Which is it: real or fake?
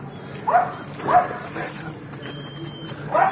real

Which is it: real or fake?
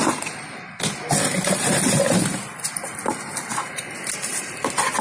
real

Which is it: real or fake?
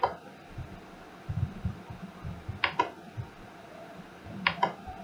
fake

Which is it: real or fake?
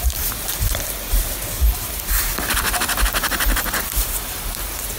fake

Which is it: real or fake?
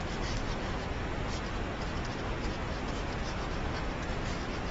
real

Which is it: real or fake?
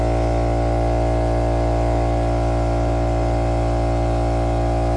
real